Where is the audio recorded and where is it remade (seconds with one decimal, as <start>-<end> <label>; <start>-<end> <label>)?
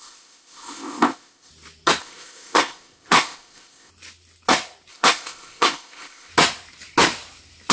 0.0-1.5 remade; 1.5-2.0 recorded; 2.0-3.9 remade; 3.9-4.9 recorded; 4.9-6.3 remade; 6.3-7.7 recorded